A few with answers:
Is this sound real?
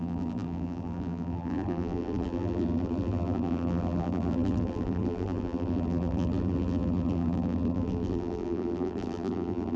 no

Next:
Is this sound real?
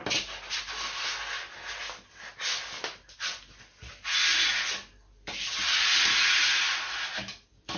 yes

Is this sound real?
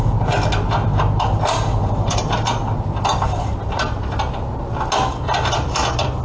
yes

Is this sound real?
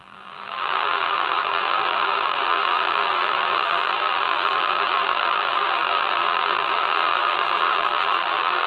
no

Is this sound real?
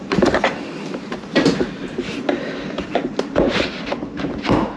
no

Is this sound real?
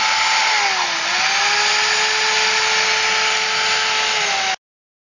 yes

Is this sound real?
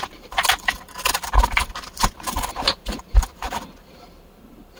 no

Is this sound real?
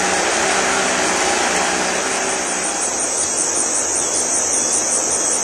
yes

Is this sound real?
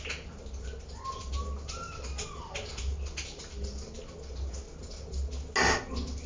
yes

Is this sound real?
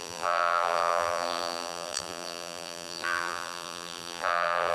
no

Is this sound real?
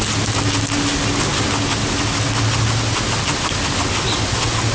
yes